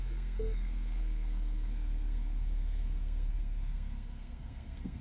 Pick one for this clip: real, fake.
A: fake